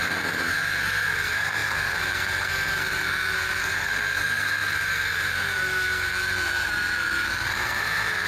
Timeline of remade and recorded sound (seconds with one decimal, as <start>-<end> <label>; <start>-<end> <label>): 0.0-8.3 remade